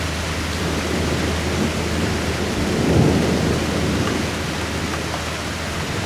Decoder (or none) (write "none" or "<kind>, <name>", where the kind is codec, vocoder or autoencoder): none